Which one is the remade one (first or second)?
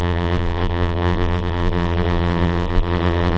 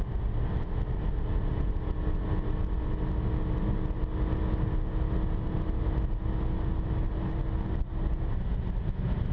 first